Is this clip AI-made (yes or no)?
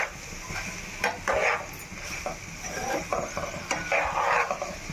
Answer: no